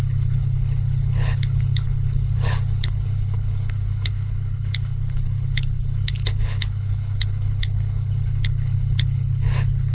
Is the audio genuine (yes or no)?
no